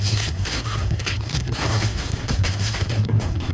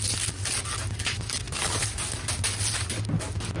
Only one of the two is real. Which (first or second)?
second